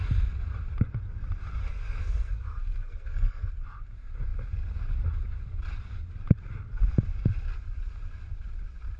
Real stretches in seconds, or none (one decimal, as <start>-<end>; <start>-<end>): 0.0-1.6; 3.5-9.0